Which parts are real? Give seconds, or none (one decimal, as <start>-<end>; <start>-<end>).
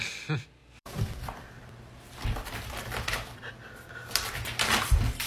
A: 0.0-0.6; 3.5-5.3